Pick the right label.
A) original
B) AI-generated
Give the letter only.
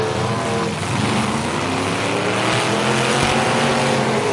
A